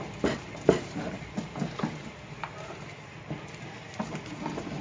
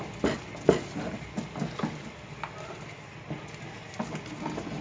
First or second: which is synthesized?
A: first